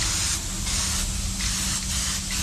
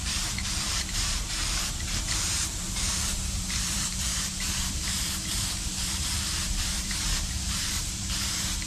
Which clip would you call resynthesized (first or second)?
second